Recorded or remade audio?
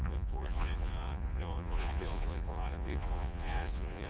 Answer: remade